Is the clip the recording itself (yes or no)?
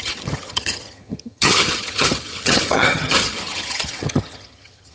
no